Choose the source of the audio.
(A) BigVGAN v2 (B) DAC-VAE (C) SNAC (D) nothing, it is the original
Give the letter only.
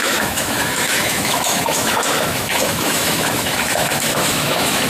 B